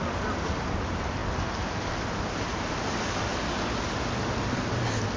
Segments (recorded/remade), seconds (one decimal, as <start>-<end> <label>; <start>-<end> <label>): 0.0-5.2 recorded

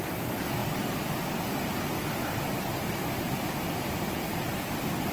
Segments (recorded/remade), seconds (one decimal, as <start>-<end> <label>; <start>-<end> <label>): 0.0-5.1 recorded

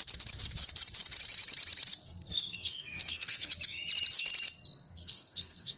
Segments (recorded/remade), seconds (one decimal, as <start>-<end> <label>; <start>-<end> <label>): 0.0-2.0 recorded; 2.0-3.5 remade; 3.5-4.9 recorded; 4.9-5.8 remade

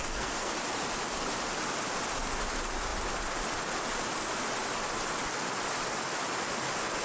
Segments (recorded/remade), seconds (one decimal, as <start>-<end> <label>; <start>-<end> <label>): 0.0-0.5 remade; 0.5-7.0 recorded

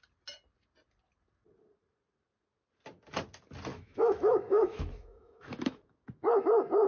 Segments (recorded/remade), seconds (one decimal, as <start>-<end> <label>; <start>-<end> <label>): 0.0-3.7 recorded; 3.7-6.0 remade; 6.0-6.9 recorded

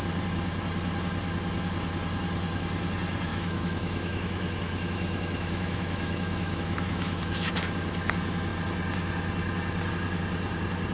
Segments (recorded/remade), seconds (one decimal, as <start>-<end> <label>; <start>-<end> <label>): 0.0-3.3 recorded; 3.3-7.5 remade; 7.5-10.9 recorded